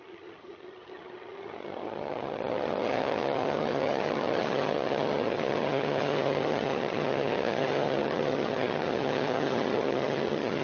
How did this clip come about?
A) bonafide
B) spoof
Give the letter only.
B